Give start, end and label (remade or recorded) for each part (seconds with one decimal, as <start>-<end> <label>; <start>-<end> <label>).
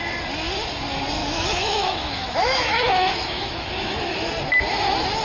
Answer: 0.0-1.2 recorded; 1.2-4.3 remade; 4.3-5.2 recorded